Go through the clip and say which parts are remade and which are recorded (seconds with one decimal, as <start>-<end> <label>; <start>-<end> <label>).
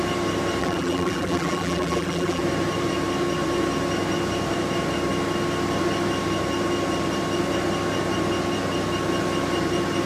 0.0-0.6 recorded; 0.6-2.4 remade; 2.4-10.1 recorded